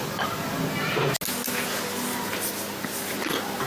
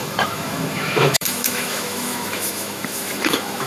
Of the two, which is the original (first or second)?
first